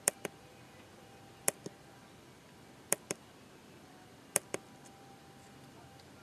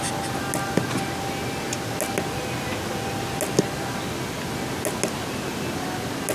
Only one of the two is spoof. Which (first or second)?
first